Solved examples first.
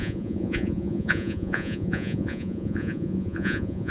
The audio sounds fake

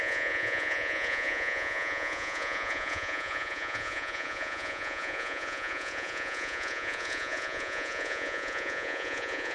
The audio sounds fake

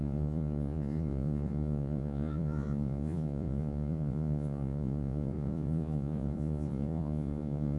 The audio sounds fake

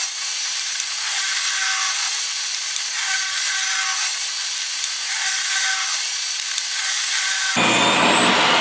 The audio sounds real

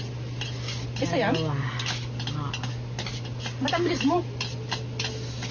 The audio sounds real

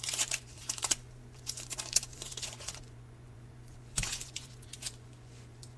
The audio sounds fake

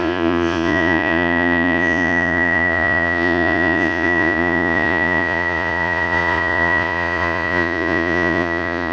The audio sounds fake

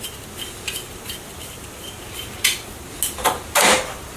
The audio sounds real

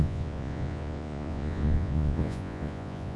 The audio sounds fake